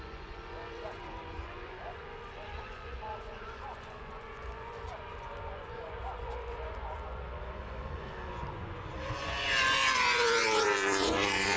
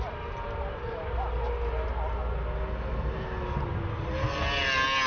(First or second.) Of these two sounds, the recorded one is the second